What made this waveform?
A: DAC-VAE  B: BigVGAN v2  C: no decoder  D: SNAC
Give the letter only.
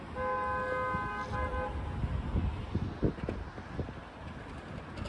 C